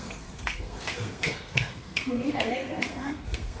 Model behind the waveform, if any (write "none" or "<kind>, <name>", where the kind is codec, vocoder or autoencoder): codec, SNAC